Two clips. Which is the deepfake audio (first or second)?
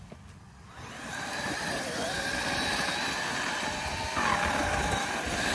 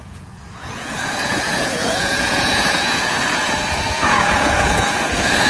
second